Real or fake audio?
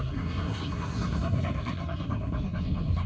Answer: fake